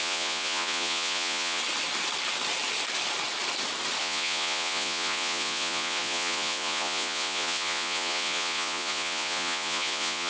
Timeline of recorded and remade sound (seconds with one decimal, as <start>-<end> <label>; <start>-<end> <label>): 0.0-1.6 remade; 1.6-4.0 recorded; 4.0-10.3 remade